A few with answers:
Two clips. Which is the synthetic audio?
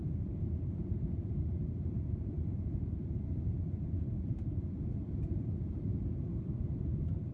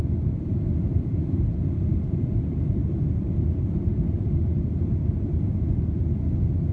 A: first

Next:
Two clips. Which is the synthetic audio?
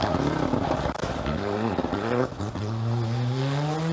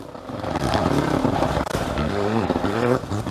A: second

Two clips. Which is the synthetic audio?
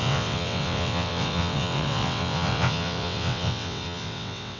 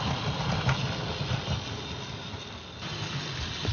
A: first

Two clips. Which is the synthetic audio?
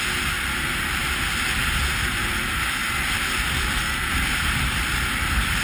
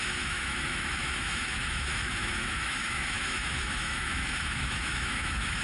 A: second